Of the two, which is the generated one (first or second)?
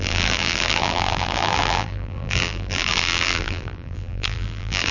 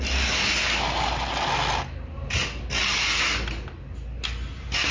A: first